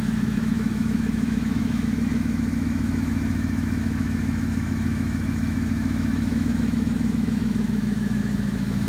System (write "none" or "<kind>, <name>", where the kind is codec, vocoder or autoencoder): autoencoder, DAC-VAE